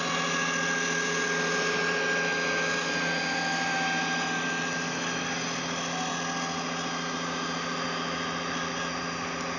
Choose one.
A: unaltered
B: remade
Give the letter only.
A